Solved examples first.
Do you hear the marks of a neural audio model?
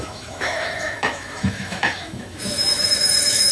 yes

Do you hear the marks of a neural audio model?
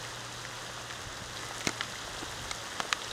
no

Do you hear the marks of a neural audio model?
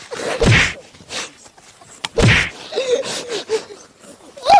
no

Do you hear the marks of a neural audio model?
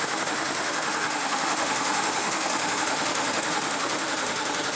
yes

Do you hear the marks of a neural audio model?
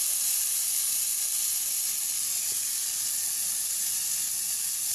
no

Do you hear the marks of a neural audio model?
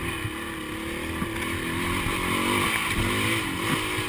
no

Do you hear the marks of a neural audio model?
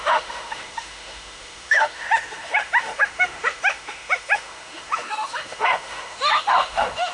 yes